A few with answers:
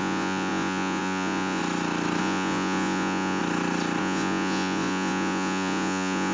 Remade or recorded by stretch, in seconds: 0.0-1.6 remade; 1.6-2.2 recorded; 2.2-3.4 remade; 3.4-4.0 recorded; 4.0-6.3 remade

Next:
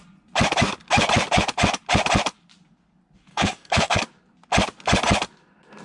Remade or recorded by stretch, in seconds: 0.0-3.3 recorded; 3.3-4.0 remade; 4.0-5.8 recorded

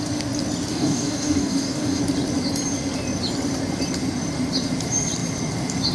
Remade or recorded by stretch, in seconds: 0.0-0.7 recorded; 0.7-2.0 remade; 2.0-5.9 recorded